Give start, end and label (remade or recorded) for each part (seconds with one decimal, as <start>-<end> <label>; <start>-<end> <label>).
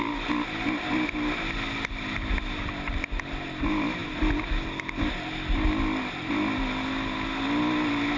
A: 0.0-8.2 recorded